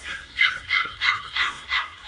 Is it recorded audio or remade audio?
remade